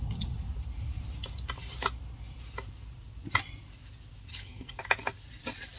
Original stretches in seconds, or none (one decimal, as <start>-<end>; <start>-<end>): 0.0-4.3; 4.8-5.8